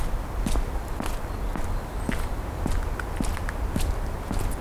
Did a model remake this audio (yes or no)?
no